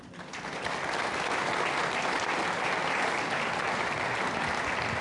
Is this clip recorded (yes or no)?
yes